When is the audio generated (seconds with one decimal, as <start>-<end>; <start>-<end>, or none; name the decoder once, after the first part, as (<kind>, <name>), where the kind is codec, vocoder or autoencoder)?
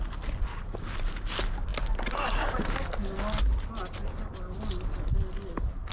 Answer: none